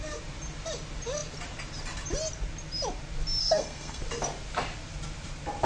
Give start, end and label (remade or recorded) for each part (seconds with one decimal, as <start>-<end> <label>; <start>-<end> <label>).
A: 0.0-3.4 recorded; 3.4-4.0 remade; 4.0-5.7 recorded